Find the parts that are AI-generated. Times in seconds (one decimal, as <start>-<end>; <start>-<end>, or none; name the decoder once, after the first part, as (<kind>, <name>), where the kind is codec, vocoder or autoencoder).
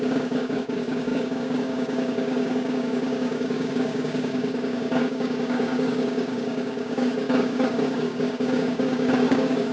0.0-9.7 (codec, DAC)